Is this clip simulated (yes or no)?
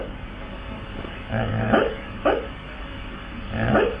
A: yes